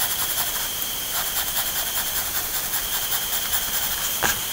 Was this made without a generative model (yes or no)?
no